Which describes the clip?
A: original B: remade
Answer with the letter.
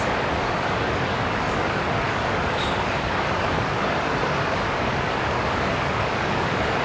B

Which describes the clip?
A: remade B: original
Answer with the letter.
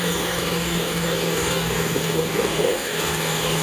A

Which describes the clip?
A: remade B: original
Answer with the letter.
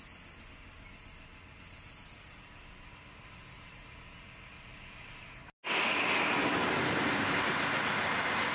B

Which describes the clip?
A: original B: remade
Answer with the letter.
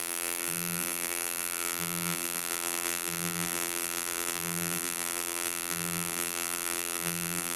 B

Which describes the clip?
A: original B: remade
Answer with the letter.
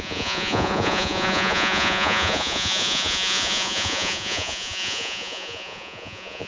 B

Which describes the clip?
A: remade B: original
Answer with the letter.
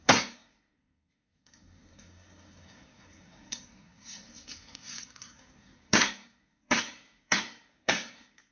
A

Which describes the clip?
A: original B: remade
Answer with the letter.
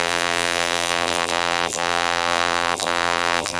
B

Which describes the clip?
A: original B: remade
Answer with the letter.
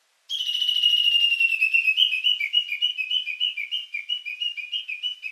A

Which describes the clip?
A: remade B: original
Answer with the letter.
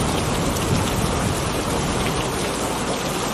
A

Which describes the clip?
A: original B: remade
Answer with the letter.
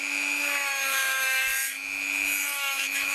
B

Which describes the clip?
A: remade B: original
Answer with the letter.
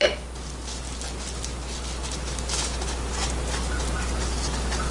B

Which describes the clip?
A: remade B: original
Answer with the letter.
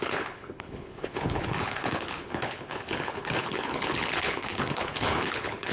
A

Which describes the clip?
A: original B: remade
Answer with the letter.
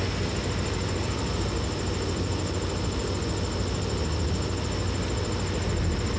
A